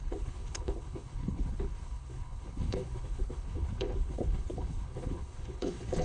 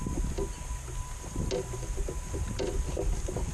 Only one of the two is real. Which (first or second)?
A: second